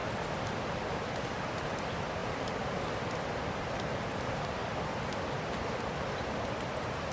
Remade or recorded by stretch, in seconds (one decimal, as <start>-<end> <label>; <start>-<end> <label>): 0.0-1.5 remade; 1.5-2.2 recorded; 2.2-2.8 remade; 2.8-4.6 recorded; 4.6-6.6 remade; 6.6-7.1 recorded